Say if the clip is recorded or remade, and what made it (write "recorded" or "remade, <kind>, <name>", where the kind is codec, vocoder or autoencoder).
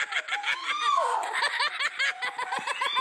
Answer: recorded